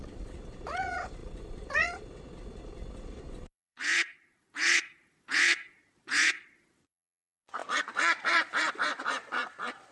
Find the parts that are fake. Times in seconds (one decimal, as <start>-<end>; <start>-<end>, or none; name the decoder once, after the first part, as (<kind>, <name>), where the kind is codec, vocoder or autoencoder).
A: 0.0-9.9 (vocoder, Vocos)